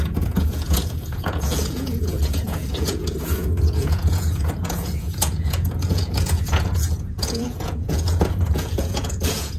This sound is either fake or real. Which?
fake